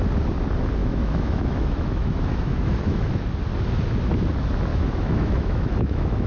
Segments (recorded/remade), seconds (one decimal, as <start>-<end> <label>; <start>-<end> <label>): 0.0-0.8 recorded; 0.8-3.2 remade; 3.2-4.7 recorded; 4.7-6.3 remade